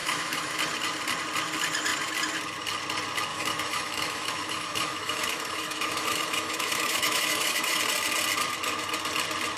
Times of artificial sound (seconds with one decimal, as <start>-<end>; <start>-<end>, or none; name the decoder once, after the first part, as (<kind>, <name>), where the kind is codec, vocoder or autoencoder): 0.0-0.6 (autoencoder, DAC-VAE); 3.3-7.8